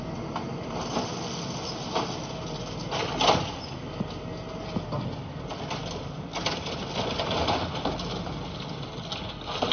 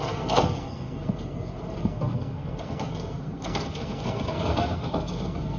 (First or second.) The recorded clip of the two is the first